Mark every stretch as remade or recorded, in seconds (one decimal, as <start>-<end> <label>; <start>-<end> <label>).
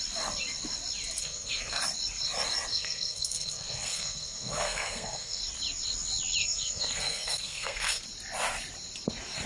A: 0.0-1.2 recorded; 1.2-1.8 remade; 1.8-2.7 recorded; 2.7-5.4 remade; 5.4-6.4 recorded; 6.4-8.0 remade; 8.0-9.5 recorded